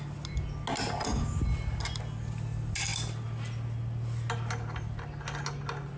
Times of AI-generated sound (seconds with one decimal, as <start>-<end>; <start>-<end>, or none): none